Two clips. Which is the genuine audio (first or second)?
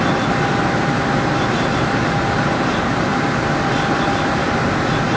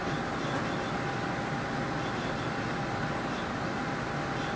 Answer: second